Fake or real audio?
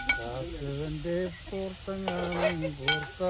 real